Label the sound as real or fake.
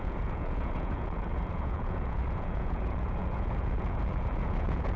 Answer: fake